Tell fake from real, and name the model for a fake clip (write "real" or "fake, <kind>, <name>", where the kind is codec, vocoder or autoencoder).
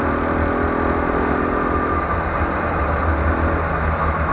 real